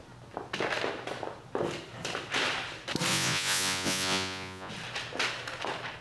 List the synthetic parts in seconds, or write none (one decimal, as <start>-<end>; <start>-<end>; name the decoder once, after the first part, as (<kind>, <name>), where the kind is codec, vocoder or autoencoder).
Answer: 3.1-4.7 (vocoder, Vocos)